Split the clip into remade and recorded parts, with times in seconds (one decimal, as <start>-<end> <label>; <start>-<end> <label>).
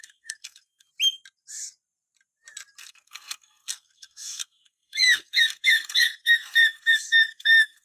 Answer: 0.0-0.9 remade; 0.9-2.8 recorded; 2.8-7.8 remade